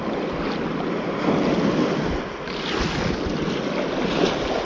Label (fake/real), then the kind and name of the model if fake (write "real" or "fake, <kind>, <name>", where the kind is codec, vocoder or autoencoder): real